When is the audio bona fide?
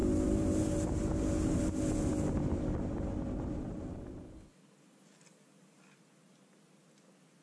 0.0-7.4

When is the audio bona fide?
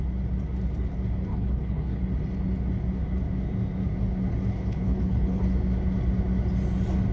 0.0-1.3; 2.0-4.5; 5.4-7.1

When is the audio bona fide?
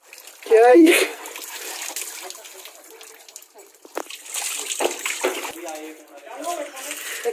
0.0-0.7; 1.2-7.3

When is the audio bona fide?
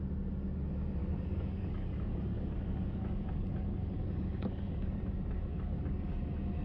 0.0-1.0; 5.0-5.5; 6.1-6.6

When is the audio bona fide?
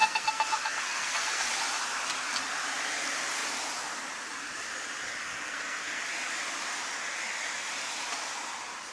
1.5-5.2; 6.0-8.9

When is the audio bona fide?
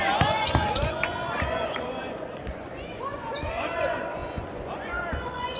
none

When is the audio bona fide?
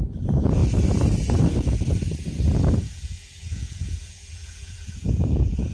0.6-2.8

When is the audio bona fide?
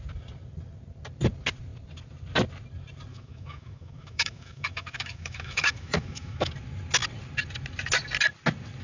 0.0-3.1; 6.5-8.8